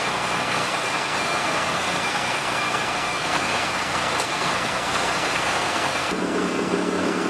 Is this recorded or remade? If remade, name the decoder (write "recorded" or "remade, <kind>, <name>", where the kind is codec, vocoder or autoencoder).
remade, codec, SNAC